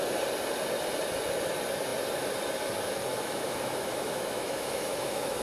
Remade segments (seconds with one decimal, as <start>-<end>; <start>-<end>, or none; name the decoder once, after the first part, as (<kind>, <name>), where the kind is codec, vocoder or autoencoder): 3.1-5.4 (autoencoder, DAC-VAE)

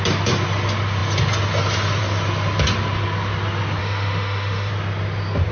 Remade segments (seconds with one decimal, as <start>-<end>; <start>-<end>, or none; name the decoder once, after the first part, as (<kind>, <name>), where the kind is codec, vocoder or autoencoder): 3.8-4.7 (autoencoder, DAC-VAE)

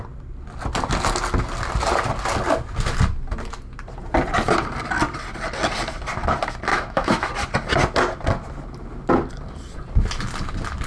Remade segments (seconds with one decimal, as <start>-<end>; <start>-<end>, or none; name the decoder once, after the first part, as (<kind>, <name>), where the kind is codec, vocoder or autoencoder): 6.7-7.3 (autoencoder, DAC-VAE)

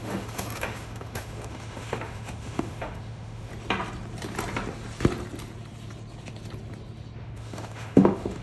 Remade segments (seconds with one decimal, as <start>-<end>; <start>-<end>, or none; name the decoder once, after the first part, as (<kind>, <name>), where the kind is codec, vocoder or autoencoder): 0.0-3.5 (autoencoder, DAC-VAE); 7.2-8.4

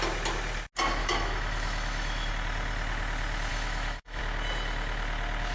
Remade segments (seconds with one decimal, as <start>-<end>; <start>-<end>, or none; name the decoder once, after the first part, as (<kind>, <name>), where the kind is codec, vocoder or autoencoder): 1.0-2.3 (autoencoder, DAC-VAE); 3.5-4.2

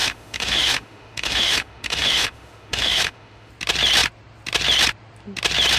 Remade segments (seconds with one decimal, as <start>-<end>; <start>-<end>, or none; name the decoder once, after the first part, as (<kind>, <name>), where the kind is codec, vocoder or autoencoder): 0.0-3.5 (autoencoder, DAC-VAE)